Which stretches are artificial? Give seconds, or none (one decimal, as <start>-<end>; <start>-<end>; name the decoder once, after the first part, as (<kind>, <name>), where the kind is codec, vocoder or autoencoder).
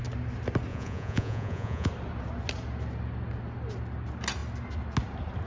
0.7-1.9 (vocoder, Vocos)